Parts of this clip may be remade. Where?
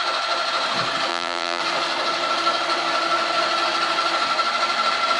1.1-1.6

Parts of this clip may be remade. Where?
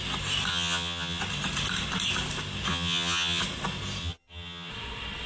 0.5-1.2; 2.7-3.4; 4.0-4.7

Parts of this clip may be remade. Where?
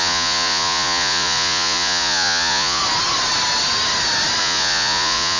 0.0-2.8; 4.4-5.4